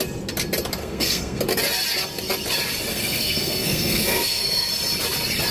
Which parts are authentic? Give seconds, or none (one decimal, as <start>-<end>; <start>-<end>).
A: 0.0-0.8; 1.4-2.9; 4.7-5.5